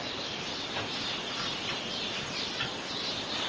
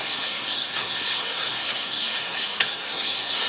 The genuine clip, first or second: first